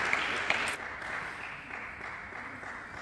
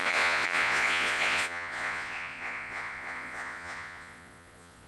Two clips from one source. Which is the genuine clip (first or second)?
first